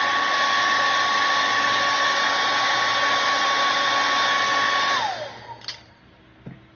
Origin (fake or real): real